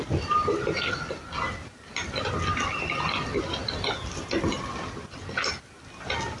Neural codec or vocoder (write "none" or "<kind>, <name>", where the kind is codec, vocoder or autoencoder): none